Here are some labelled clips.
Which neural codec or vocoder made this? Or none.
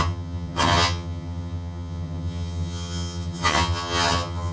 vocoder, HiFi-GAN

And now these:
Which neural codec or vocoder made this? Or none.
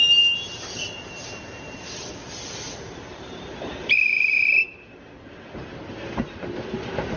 vocoder, BigVGAN v2